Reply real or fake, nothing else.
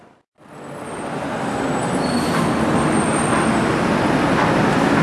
real